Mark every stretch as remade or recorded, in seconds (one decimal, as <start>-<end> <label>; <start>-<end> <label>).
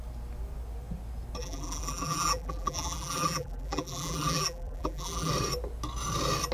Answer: 0.0-1.4 recorded; 1.4-5.3 remade; 5.3-6.5 recorded